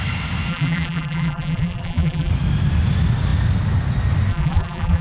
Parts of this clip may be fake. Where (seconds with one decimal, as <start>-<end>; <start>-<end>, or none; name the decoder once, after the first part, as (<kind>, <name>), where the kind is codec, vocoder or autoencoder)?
0.5-2.3 (vocoder, BigVGAN v2); 4.3-5.0